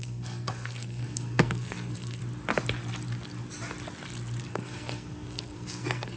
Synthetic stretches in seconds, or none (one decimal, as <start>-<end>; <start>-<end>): 0.0-2.2; 4.5-6.2